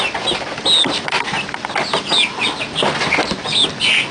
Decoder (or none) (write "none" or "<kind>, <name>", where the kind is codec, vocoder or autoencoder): none